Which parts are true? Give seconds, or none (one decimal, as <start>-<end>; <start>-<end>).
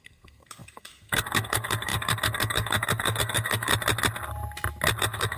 3.7-5.0